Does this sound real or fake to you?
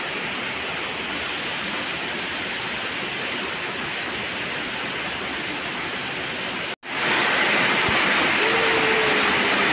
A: real